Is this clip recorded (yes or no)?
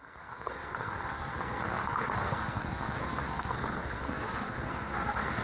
no